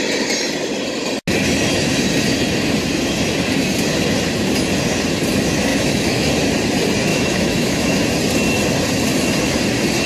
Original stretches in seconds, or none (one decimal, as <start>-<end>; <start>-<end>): 0.0-5.7; 6.3-7.1; 8.0-10.1